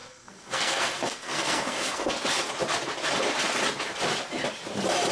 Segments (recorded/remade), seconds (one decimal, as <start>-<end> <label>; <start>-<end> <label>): 0.0-2.1 remade; 2.1-5.1 recorded